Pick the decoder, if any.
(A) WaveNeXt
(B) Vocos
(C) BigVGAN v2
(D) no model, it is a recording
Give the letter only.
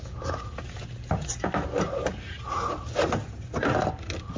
D